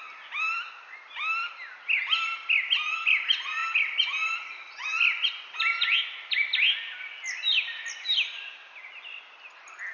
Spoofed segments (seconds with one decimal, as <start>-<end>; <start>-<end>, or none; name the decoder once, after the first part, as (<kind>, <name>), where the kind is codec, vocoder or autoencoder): none